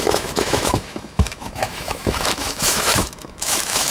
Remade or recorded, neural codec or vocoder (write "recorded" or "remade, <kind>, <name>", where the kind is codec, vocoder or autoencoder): remade, autoencoder, DAC-VAE